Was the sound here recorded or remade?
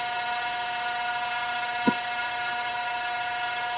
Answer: remade